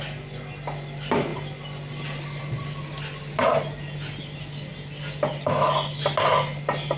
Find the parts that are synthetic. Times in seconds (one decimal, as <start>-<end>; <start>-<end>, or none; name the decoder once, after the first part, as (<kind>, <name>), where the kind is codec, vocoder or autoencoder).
4.7-5.3 (vocoder, BigVGAN v2)